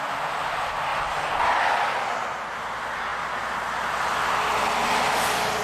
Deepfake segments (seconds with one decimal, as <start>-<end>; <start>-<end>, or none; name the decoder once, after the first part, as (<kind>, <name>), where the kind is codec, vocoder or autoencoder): 0.9-1.5 (vocoder, BigVGAN v2)